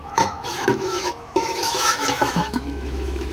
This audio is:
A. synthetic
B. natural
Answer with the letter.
A